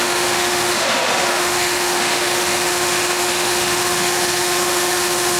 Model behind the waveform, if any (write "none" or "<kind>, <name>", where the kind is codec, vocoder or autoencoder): autoencoder, DAC-VAE